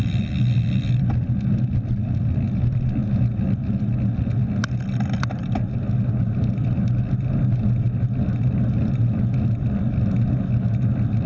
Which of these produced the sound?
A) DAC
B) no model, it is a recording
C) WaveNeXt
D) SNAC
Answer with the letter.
B